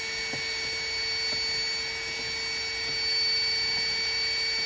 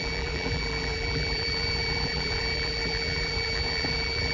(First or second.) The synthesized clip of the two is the second